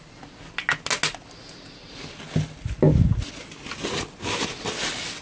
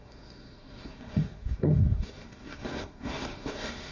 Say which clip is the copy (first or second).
second